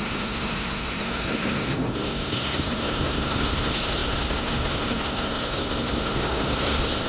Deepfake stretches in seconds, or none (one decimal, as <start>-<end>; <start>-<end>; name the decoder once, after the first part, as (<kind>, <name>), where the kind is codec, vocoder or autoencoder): 0.0-7.1 (codec, SNAC)